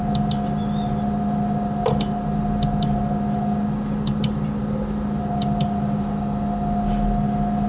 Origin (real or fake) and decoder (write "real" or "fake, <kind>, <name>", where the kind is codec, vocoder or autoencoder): real